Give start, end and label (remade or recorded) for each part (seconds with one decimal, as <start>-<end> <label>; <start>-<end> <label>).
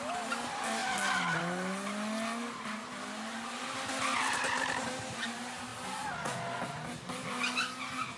0.0-8.2 recorded